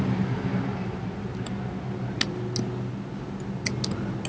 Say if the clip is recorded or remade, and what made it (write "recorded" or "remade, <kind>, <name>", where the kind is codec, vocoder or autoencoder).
recorded